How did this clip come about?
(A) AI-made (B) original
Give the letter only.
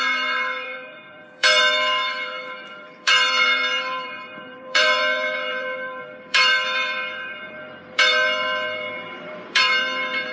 A